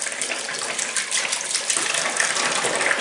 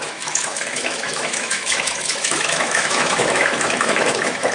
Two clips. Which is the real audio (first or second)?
first